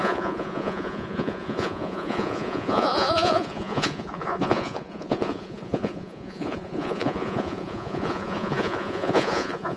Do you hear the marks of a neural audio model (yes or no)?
yes